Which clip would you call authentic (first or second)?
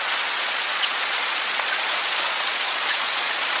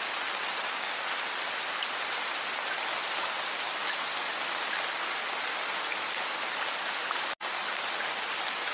second